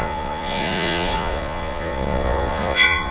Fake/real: fake